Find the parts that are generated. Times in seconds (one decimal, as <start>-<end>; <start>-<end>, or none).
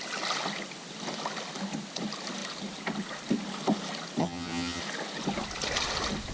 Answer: 4.2-4.8